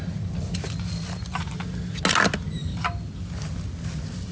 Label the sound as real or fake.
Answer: real